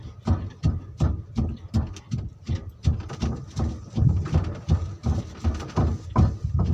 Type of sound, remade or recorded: recorded